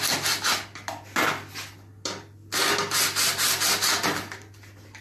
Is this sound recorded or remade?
recorded